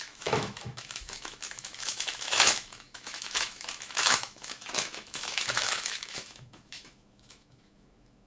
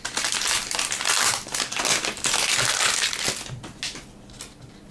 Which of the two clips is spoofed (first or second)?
first